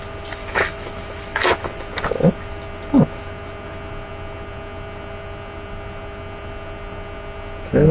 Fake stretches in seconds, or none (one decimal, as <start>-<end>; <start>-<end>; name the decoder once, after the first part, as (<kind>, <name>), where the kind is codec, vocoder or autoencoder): 0.4-1.5 (autoencoder, DAC-VAE)